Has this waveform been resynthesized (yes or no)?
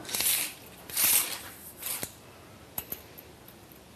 yes